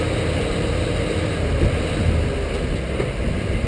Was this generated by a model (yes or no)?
no